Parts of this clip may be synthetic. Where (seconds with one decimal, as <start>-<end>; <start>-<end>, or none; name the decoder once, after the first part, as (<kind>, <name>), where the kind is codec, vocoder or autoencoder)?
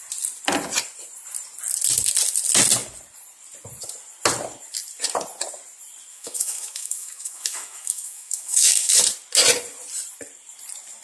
6.1-9.0 (autoencoder, DAC-VAE)